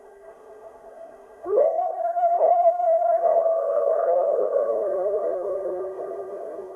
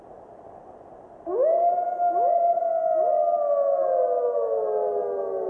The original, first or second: second